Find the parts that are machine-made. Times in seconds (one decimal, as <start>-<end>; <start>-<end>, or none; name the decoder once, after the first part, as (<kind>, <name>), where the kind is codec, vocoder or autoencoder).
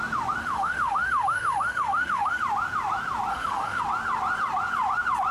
0.4-2.4 (autoencoder, DAC-VAE); 3.3-3.8